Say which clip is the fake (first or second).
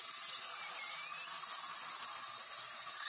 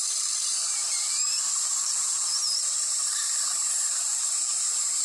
second